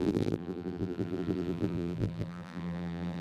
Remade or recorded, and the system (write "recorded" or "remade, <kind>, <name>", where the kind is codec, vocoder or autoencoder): remade, vocoder, BigVGAN v2